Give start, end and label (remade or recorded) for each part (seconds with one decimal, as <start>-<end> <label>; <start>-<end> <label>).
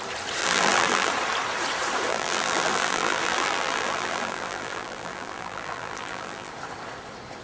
0.0-0.4 recorded; 0.4-1.1 remade; 1.1-2.1 recorded; 2.1-6.5 remade; 6.5-7.4 recorded